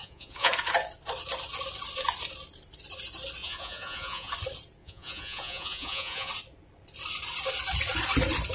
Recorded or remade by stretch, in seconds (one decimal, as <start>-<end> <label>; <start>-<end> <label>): 0.0-0.5 remade; 0.5-3.4 recorded; 3.4-4.3 remade; 4.3-4.8 recorded; 4.8-6.3 remade; 6.3-8.5 recorded

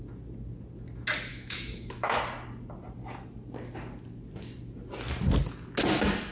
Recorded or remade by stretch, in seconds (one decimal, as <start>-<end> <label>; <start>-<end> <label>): 0.0-1.3 recorded; 1.3-2.2 remade; 2.2-6.3 recorded

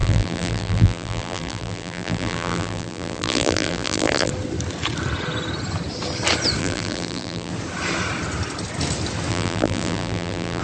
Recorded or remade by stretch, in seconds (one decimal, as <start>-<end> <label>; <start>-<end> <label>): 0.0-4.3 remade; 4.3-6.6 recorded; 6.6-7.5 remade; 7.5-9.3 recorded; 9.3-10.6 remade

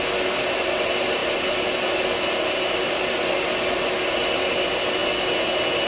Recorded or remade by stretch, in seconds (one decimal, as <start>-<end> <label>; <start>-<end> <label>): 0.0-5.9 recorded

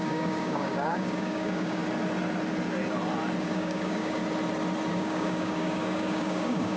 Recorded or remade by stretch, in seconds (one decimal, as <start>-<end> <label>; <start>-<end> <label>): 0.0-1.8 remade; 1.8-3.4 recorded; 3.4-4.2 remade; 4.2-4.9 recorded; 4.9-6.8 remade

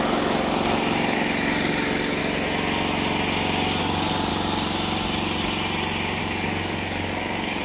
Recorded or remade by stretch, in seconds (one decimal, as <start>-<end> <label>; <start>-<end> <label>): 0.0-2.2 remade; 2.2-3.8 recorded; 3.8-4.3 remade; 4.3-6.2 recorded; 6.2-7.6 remade

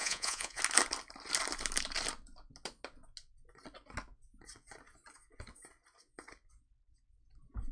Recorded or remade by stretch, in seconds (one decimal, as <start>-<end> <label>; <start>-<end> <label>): 0.0-0.6 remade; 0.6-7.7 recorded